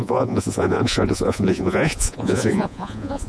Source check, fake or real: fake